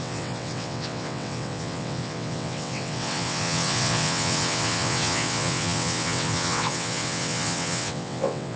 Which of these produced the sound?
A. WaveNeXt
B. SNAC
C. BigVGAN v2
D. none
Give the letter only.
A